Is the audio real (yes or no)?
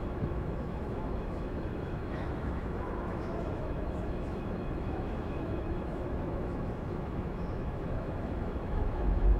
no